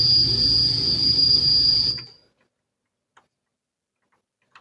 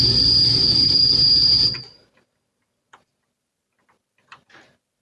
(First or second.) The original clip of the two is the first